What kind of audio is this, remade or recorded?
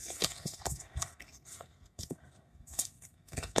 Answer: remade